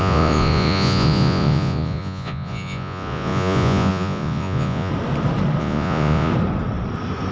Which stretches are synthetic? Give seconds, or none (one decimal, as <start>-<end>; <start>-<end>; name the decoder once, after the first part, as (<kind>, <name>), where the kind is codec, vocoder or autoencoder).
0.0-4.9 (vocoder, Vocos); 5.6-6.3